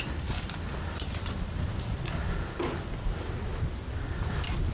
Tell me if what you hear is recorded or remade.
recorded